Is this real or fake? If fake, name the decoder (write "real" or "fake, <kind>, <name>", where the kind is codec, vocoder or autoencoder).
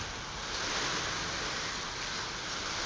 real